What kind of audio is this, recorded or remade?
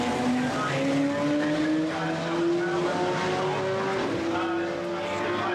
recorded